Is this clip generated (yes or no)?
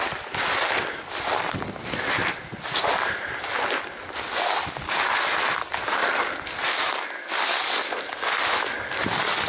no